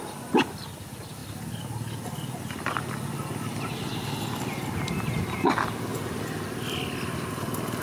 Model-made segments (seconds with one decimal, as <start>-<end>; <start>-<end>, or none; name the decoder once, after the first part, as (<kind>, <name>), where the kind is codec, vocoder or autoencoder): none